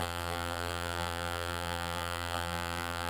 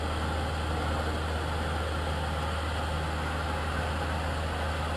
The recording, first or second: second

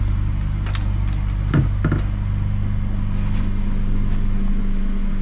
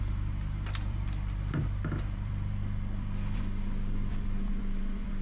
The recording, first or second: first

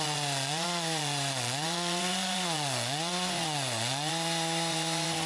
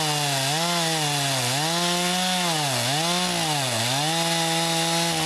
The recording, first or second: second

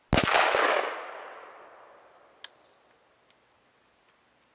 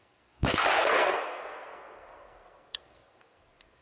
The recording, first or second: first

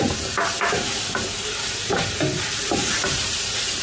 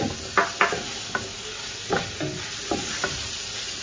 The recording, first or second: second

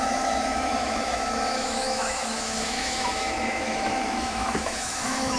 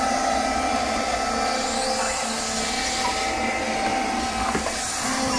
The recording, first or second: second